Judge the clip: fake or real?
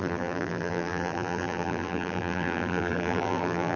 fake